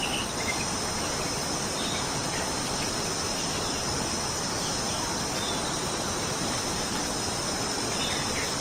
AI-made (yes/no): no